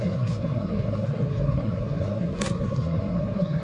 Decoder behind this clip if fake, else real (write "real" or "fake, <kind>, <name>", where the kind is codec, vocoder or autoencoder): fake, codec, SNAC